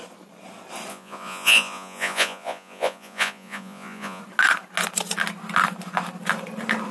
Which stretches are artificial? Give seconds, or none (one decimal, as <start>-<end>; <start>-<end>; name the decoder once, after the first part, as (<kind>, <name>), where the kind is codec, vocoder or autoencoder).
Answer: 0.9-4.2 (vocoder, Vocos)